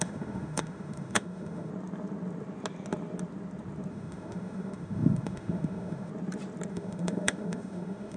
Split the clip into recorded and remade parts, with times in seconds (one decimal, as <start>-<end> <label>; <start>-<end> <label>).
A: 0.0-1.7 remade; 1.7-3.9 recorded; 3.9-6.1 remade; 6.1-6.7 recorded; 6.7-8.2 remade